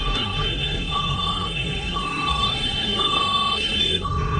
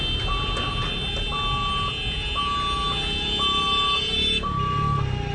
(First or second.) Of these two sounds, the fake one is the first